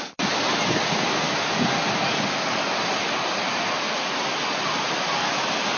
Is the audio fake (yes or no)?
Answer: no